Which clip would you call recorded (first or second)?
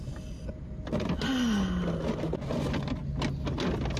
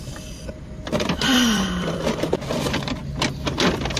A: first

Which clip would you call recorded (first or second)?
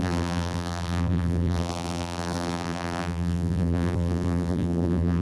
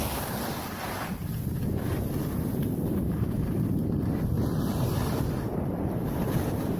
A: second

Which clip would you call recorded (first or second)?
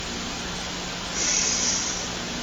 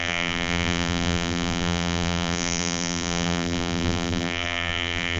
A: first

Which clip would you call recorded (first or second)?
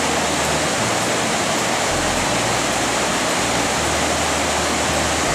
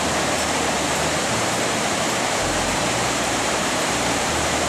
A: first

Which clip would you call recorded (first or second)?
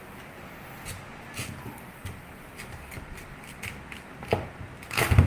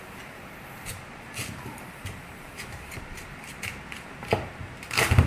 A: first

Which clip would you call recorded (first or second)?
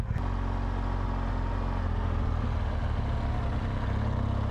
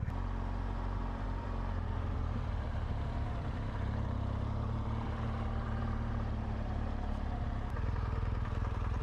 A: first